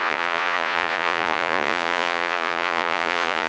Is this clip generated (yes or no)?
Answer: yes